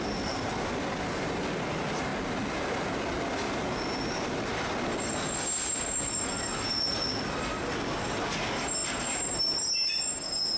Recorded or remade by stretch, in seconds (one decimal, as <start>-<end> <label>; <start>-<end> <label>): 0.0-10.6 recorded